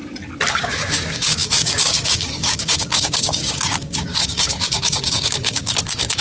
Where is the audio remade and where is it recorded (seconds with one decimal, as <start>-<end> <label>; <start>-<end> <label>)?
0.0-0.5 recorded; 0.5-6.2 remade